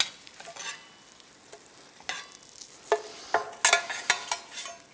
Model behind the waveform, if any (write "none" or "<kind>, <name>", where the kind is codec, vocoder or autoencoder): none